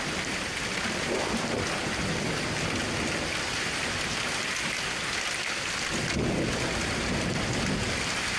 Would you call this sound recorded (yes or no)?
yes